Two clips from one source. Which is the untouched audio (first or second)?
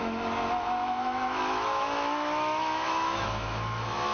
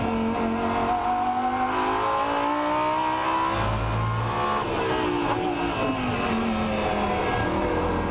second